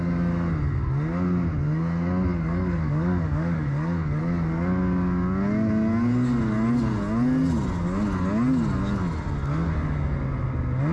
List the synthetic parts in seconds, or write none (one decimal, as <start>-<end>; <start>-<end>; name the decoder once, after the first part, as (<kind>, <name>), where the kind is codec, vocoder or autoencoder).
2.3-4.2 (codec, DAC)